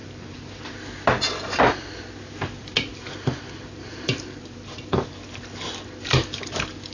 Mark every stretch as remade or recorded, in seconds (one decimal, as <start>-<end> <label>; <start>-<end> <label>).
0.0-0.6 remade; 0.6-2.6 recorded; 2.6-5.1 remade; 5.1-6.9 recorded